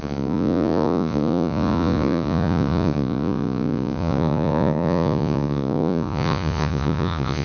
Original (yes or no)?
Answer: no